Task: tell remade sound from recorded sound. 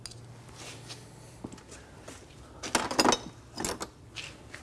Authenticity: recorded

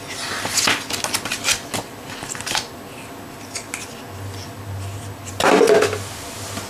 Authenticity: recorded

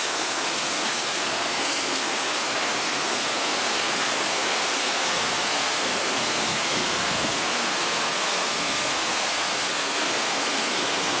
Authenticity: remade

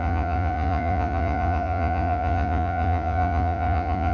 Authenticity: remade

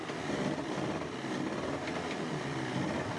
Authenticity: recorded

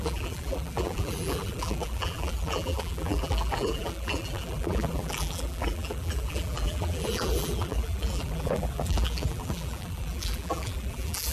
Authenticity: remade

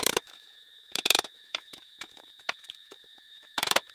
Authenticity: remade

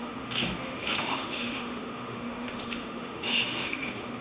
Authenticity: remade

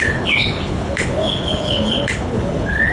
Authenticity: remade